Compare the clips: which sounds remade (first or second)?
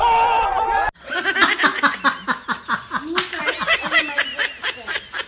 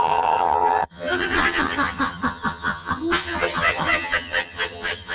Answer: second